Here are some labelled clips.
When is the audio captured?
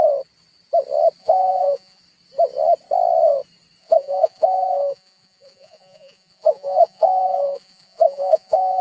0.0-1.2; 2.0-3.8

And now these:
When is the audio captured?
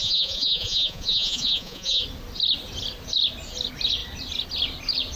2.0-5.2